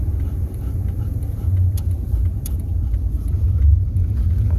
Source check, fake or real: fake